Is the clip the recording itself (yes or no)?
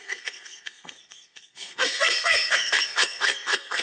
no